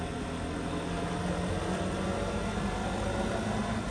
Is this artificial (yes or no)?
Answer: no